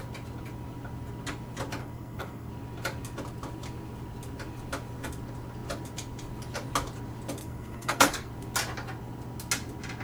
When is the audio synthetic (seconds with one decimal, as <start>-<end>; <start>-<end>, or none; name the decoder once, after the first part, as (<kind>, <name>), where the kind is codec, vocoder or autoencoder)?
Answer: 1.8-2.5 (codec, SNAC); 7.4-8.3